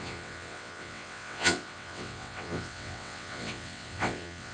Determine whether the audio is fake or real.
fake